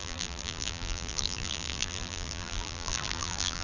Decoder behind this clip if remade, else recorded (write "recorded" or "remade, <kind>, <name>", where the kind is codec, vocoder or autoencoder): remade, vocoder, BigVGAN v2